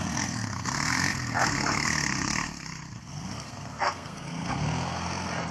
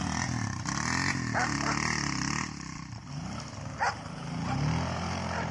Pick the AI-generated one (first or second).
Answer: first